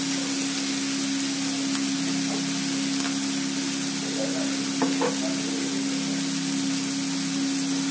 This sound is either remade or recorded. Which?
recorded